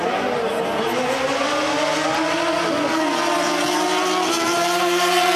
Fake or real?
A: real